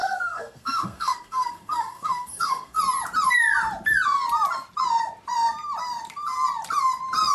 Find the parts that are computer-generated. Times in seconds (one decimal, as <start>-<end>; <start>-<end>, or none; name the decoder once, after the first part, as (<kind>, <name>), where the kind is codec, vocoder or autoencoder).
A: 0.0-2.8 (codec, SNAC)